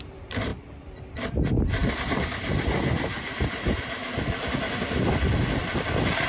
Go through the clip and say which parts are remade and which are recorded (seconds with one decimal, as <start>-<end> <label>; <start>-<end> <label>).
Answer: 0.0-1.8 remade; 1.8-5.6 recorded; 5.6-6.3 remade